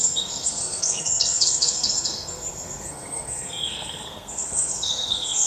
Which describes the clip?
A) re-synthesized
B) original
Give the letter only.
A